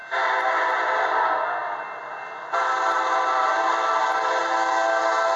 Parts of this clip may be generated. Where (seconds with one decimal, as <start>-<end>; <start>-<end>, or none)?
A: none